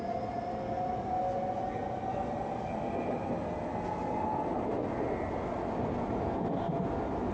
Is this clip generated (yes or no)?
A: no